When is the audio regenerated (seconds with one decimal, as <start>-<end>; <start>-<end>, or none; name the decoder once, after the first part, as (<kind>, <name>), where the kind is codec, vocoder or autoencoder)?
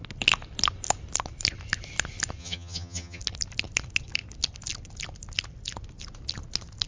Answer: 2.4-3.2 (vocoder, HiFi-GAN)